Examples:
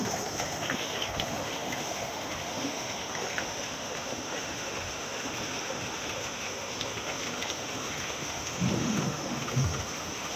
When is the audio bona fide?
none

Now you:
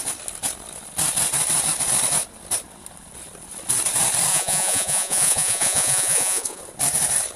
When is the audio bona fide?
0.0-4.3; 6.6-7.4

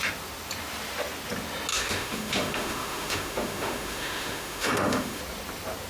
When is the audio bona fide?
0.0-1.7; 5.2-5.9